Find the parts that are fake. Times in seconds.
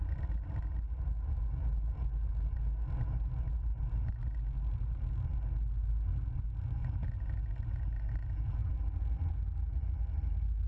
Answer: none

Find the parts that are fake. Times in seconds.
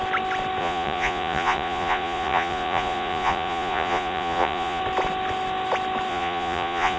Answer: 0.6-4.8 (vocoder, Vocos); 6.1-7.0